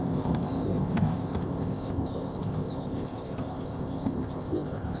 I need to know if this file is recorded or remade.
remade